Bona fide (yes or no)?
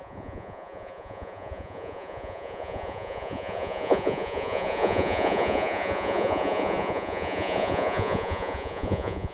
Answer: no